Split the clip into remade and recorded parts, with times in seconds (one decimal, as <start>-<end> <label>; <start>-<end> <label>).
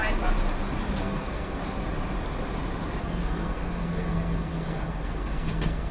0.0-1.0 recorded; 1.0-1.6 remade; 1.6-3.0 recorded; 3.0-5.9 remade